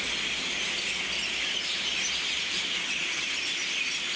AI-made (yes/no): no